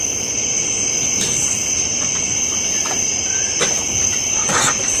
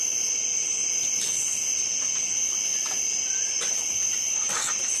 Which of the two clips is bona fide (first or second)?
second